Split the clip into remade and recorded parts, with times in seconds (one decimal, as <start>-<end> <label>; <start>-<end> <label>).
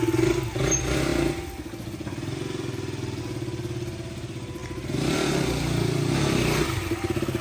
0.0-4.6 recorded; 4.6-7.4 remade